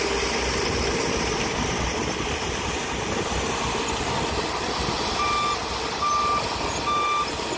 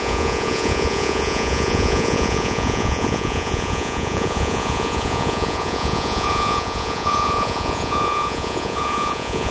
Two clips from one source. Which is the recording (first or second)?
first